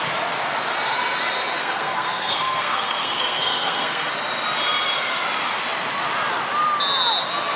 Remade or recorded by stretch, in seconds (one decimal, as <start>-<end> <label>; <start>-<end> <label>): 0.0-1.6 recorded; 1.6-4.1 remade; 4.1-7.6 recorded